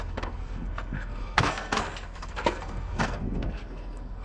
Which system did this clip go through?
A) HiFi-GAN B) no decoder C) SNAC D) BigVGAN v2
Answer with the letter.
C